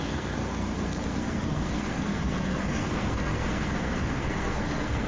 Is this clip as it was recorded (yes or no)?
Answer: no